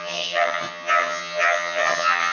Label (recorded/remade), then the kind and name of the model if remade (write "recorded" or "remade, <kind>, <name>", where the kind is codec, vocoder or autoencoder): remade, vocoder, HiFi-GAN